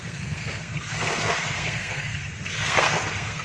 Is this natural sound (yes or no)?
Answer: no